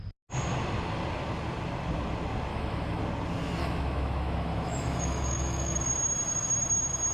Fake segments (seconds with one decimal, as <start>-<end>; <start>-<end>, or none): 2.5-3.0; 3.6-5.8